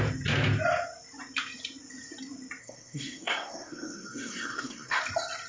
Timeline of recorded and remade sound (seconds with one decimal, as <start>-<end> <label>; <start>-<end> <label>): 0.0-2.6 recorded; 2.6-5.0 remade; 5.0-5.5 recorded